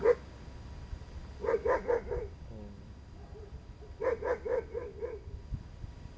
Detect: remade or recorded recorded